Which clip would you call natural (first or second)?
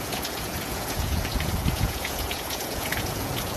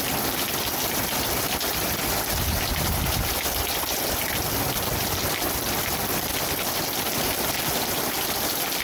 second